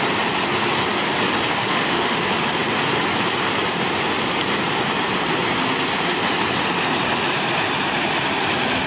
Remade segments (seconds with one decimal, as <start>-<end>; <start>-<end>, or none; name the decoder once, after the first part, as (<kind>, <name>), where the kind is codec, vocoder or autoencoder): 1.6-2.2 (autoencoder, DAC-VAE)